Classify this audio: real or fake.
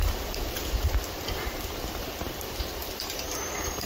fake